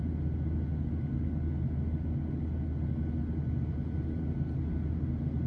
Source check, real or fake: real